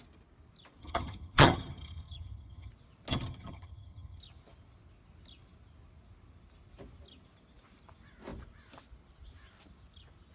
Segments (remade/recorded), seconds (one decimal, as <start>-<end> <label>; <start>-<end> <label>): 0.0-0.8 recorded; 0.8-2.7 remade; 2.7-3.1 recorded; 3.1-4.2 remade; 4.2-10.3 recorded